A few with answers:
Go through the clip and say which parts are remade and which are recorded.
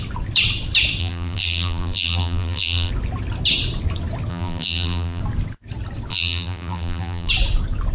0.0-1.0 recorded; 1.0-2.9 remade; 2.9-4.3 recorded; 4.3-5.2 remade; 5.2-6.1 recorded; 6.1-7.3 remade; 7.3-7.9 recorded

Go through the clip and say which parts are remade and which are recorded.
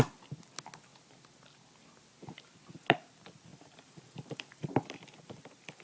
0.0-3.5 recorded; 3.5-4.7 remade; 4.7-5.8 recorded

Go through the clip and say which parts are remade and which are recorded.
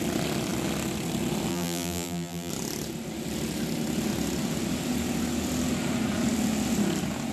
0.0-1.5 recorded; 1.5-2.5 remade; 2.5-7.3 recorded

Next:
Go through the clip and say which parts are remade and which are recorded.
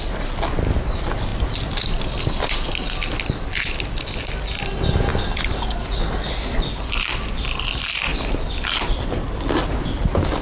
0.0-8.1 recorded; 8.1-9.2 remade; 9.2-10.4 recorded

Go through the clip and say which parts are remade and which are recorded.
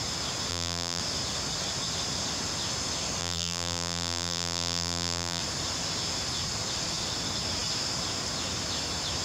0.0-0.5 recorded; 0.5-1.0 remade; 1.0-3.2 recorded; 3.2-5.4 remade; 5.4-9.2 recorded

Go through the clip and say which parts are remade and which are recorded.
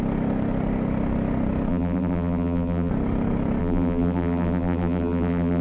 0.0-1.7 recorded; 1.7-2.9 remade; 2.9-3.6 recorded; 3.6-5.6 remade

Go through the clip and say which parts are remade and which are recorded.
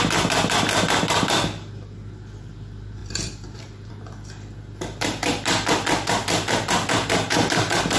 0.0-3.0 recorded; 3.0-3.9 remade; 3.9-8.0 recorded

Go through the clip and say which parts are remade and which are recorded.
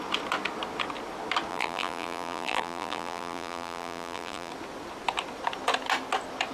0.0-1.5 recorded; 1.5-4.5 remade; 4.5-6.5 recorded